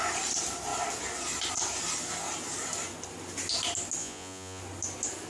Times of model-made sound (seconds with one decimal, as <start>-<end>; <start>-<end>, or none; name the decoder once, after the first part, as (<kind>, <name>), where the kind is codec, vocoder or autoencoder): 4.0-4.6 (vocoder, Vocos)